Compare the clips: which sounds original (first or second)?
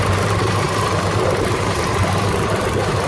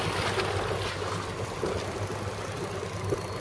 second